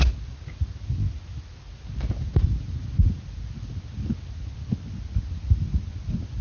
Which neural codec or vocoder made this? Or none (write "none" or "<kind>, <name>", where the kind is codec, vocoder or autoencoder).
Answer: none